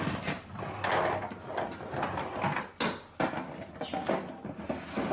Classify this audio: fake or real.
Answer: real